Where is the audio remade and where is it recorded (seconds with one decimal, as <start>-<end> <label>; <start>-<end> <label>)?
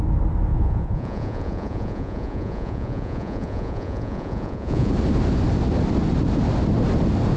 0.0-0.5 recorded; 0.5-4.9 remade; 4.9-7.4 recorded